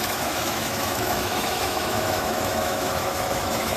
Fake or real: fake